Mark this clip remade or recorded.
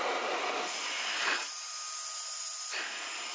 recorded